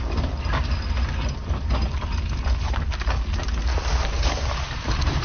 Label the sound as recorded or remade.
recorded